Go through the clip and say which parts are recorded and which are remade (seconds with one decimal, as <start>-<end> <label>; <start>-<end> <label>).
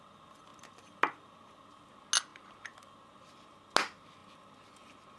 0.0-5.2 recorded